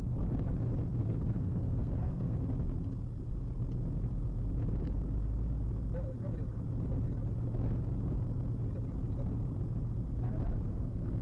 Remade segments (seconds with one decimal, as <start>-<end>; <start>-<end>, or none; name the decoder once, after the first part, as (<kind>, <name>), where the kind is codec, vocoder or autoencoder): 1.0-2.4 (codec, SNAC); 10.7-11.2